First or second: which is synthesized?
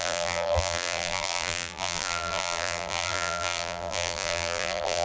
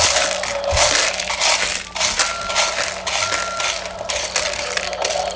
first